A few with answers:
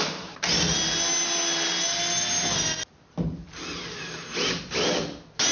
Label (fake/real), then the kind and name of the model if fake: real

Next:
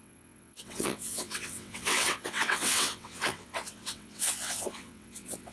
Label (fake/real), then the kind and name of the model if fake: fake, vocoder, WaveNeXt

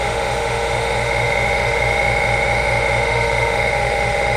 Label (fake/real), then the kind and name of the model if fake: fake, autoencoder, DAC-VAE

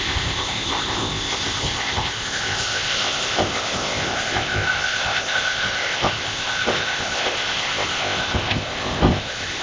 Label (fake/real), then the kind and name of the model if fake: fake, codec, ZipCodec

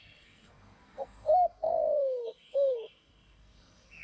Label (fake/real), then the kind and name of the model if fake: fake, codec, SNAC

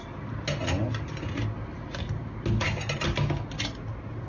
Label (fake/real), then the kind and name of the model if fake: real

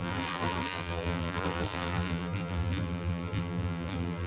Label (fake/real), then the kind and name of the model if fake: fake, vocoder, BigVGAN v2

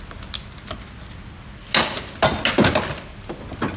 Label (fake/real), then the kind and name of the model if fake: real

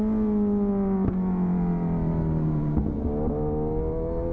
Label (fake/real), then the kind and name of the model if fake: real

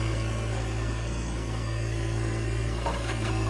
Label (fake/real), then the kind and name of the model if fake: fake, codec, SNAC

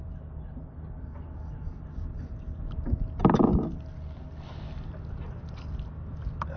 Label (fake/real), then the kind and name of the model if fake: real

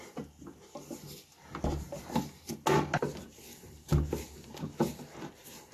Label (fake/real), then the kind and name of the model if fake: real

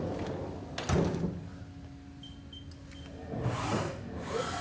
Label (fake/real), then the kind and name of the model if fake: real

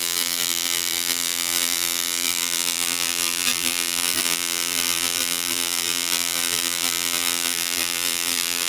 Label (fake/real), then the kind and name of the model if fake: fake, vocoder, BigVGAN v2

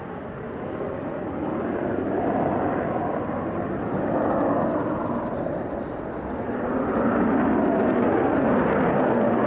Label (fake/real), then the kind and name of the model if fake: real